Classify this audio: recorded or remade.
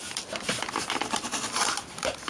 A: recorded